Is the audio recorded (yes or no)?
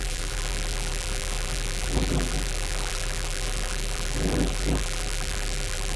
no